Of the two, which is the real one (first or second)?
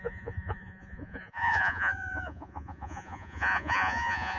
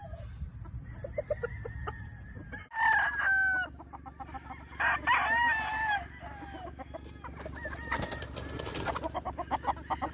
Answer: second